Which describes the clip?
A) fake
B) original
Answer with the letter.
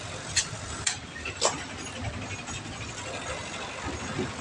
B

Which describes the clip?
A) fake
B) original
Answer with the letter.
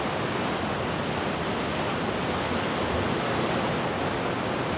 B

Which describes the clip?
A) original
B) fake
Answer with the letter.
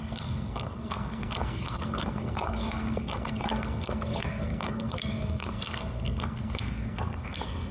B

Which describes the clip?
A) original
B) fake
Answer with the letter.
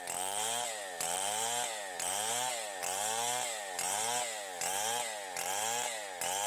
A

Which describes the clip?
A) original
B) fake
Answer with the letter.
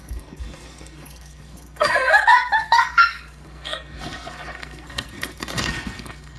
B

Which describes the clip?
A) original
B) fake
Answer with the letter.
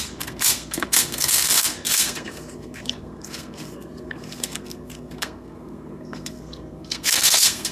B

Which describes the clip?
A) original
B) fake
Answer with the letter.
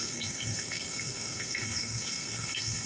B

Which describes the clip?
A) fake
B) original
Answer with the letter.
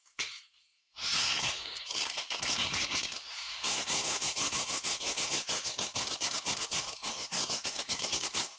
A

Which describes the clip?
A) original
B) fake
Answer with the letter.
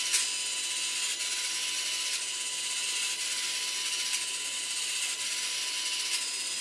A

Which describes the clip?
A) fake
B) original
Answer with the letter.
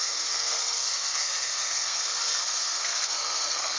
A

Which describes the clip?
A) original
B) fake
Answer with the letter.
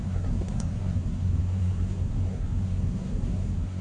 B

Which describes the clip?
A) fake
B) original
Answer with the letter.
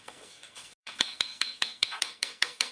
A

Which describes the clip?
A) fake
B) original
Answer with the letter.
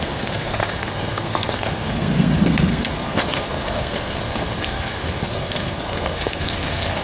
A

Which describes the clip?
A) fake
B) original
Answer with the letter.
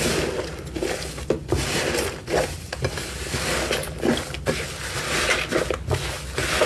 B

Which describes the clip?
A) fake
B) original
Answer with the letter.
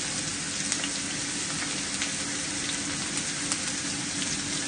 B